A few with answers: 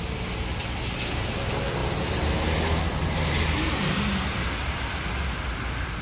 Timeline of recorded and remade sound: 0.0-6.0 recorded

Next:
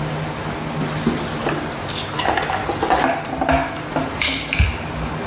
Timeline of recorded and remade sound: 0.0-5.3 recorded

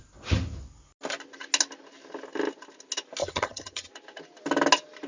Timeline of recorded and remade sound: 0.0-3.2 recorded; 3.2-3.9 remade; 3.9-5.1 recorded

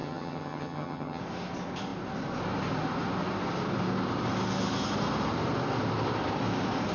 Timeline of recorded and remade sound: 0.0-1.2 remade; 1.2-6.9 recorded

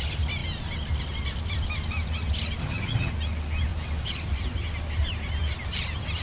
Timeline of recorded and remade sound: 0.0-2.6 recorded; 2.6-3.1 remade; 3.1-6.2 recorded

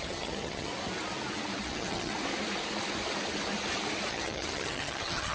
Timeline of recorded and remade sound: 0.0-0.7 remade; 0.7-1.6 recorded; 1.6-2.1 remade; 2.1-4.1 recorded; 4.1-5.3 remade

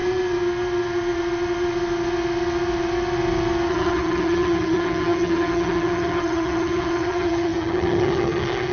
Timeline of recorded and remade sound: 0.0-3.7 recorded; 3.7-8.7 remade